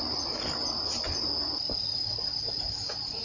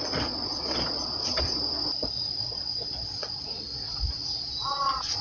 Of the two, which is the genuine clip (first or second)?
first